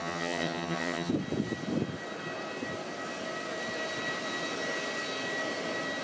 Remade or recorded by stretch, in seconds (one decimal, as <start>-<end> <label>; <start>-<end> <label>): 0.0-1.1 remade; 1.1-6.0 recorded